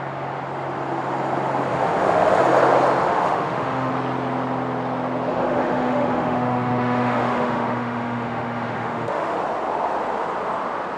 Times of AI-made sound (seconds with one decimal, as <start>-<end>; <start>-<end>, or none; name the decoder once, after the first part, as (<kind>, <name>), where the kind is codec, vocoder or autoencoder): 1.7-2.4 (autoencoder, DAC-VAE); 3.0-3.9; 5.3-9.4